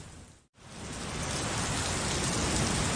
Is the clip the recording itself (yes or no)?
yes